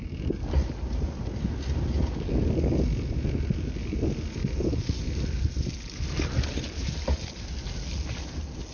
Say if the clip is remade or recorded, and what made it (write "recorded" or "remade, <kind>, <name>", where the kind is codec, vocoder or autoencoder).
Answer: recorded